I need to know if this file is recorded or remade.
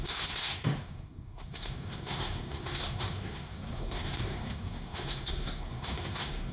remade